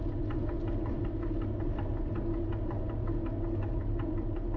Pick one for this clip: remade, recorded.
recorded